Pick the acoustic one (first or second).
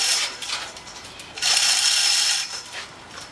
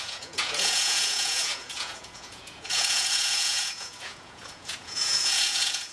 first